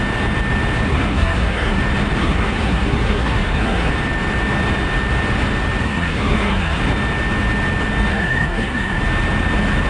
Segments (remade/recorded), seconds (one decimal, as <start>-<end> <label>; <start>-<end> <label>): 0.0-0.9 recorded; 0.9-1.8 remade; 1.8-2.2 recorded; 2.2-3.9 remade; 3.9-5.8 recorded; 5.8-6.8 remade; 6.8-8.1 recorded; 8.1-9.0 remade; 9.0-9.9 recorded